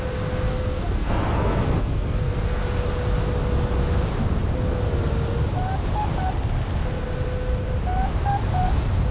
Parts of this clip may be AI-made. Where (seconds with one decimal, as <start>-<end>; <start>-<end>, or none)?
0.5-2.6